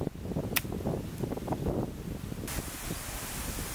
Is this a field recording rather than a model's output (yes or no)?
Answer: yes